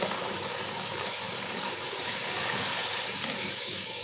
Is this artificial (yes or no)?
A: yes